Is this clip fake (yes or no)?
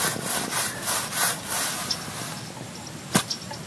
no